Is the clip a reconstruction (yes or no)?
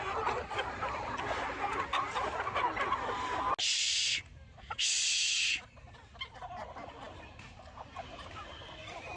no